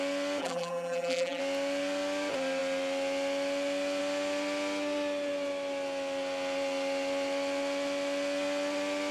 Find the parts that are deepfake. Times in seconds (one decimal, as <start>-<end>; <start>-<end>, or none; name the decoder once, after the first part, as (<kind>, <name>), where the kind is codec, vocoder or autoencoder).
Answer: 0.4-1.4 (vocoder, BigVGAN v2)